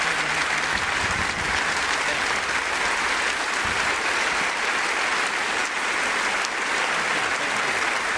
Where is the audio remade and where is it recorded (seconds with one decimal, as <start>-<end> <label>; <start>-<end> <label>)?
0.0-8.2 recorded